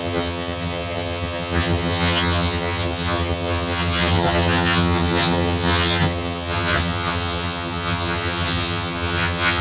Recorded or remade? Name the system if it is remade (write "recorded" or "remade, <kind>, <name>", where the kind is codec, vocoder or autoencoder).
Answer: remade, vocoder, HiFi-GAN